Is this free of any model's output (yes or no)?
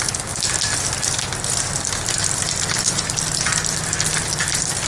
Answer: yes